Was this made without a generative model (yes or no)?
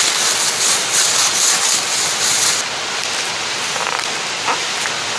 yes